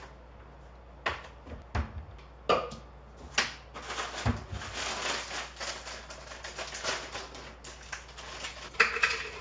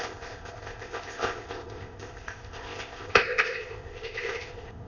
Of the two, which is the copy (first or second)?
second